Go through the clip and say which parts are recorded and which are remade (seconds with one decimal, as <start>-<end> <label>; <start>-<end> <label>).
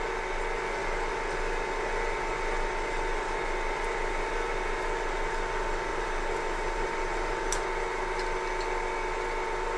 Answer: 0.0-5.9 recorded; 5.9-7.3 remade; 7.3-9.8 recorded